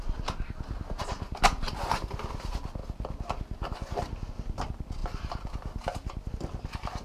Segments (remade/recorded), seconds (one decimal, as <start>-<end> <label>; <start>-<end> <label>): 0.0-7.0 recorded